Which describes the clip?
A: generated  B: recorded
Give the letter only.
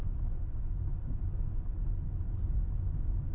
B